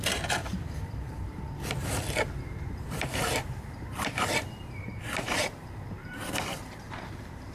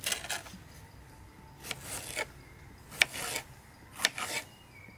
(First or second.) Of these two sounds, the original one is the second